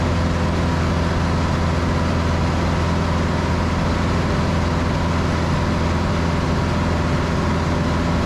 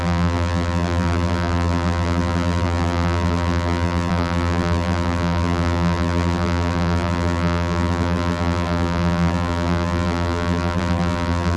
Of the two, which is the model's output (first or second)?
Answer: second